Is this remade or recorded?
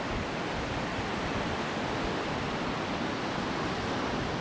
recorded